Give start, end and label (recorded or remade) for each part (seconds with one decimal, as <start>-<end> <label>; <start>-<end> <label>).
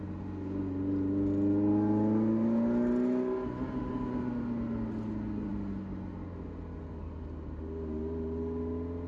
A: 0.0-9.1 recorded